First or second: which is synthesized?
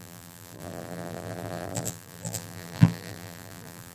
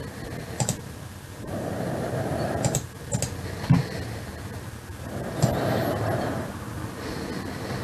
first